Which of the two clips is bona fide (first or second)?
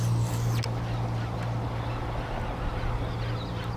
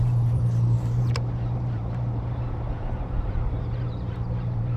first